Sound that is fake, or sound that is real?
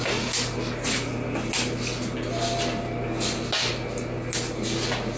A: real